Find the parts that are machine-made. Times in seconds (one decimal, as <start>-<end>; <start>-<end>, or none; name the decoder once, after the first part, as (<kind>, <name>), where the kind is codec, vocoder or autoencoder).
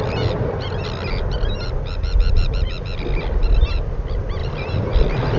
none